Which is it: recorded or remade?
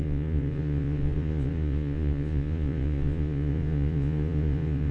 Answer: remade